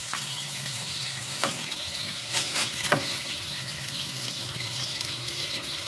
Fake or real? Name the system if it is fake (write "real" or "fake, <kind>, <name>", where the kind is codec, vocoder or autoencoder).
fake, codec, SNAC